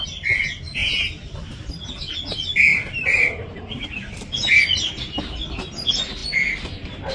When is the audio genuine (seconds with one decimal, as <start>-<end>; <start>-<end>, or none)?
0.0-0.8; 1.9-2.7; 5.2-7.1